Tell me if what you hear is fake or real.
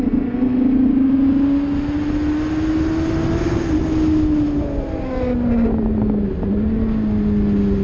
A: real